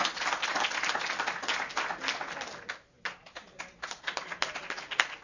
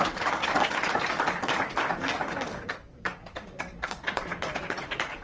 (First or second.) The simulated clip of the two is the second